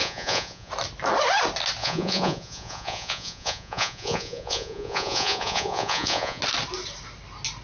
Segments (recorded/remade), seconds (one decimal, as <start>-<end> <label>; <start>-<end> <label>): 0.0-0.7 remade; 0.7-1.8 recorded; 1.8-6.4 remade; 6.4-7.6 recorded